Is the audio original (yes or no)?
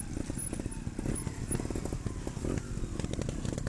yes